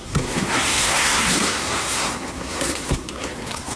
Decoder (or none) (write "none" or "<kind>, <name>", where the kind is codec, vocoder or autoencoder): codec, SNAC